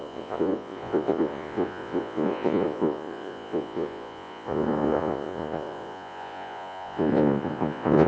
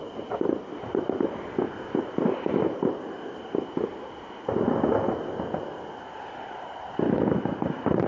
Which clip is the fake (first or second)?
first